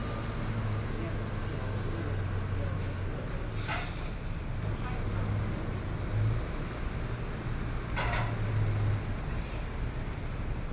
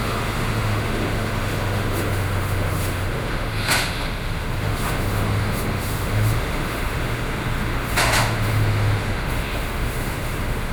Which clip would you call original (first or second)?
first